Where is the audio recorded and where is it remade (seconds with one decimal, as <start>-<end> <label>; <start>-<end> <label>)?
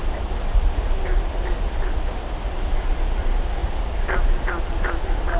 0.0-5.4 recorded